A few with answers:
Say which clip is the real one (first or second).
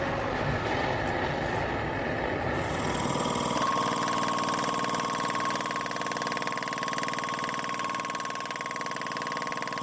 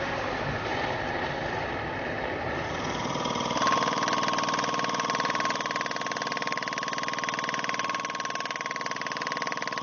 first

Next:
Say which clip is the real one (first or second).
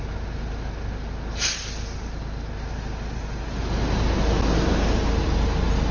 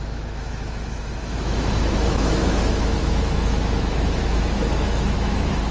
first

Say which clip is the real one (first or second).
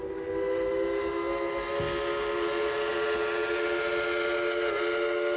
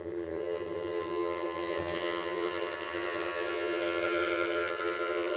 first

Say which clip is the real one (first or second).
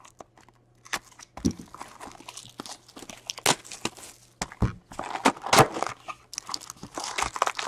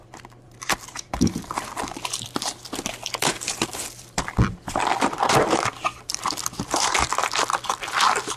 first